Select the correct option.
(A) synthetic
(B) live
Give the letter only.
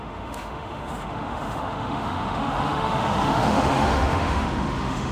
A